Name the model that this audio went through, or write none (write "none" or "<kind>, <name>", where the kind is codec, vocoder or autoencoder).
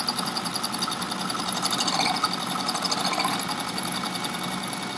none